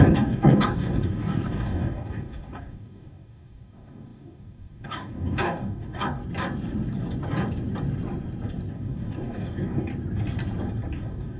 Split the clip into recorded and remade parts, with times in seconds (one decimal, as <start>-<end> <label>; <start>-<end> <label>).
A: 0.0-6.2 remade; 6.2-8.7 recorded; 8.7-9.9 remade; 9.9-10.9 recorded; 10.9-11.4 remade

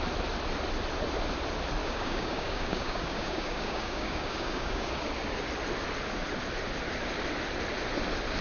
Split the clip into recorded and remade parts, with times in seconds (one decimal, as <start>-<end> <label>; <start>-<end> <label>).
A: 0.0-1.8 recorded; 1.8-4.9 remade; 4.9-8.4 recorded